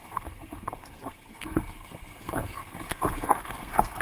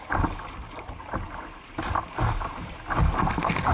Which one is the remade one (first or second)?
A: first